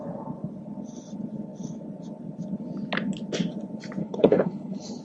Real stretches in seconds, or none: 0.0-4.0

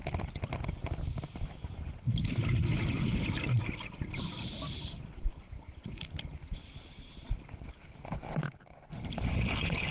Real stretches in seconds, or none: 0.0-9.3

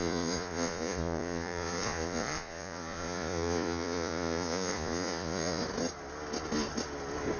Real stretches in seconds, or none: 5.6-7.4

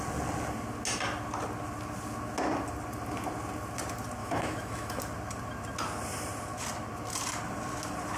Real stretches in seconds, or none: 0.0-4.2; 5.0-8.2

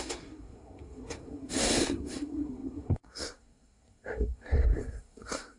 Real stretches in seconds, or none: none